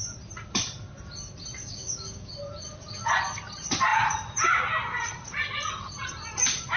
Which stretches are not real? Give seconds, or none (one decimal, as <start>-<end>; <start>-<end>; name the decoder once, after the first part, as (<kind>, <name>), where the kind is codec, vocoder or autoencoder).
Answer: 1.6-2.3 (codec, DAC)